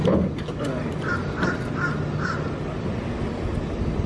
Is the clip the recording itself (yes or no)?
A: yes